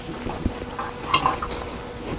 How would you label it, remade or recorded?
recorded